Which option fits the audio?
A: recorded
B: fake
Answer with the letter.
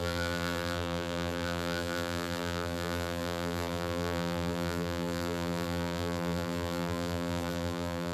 B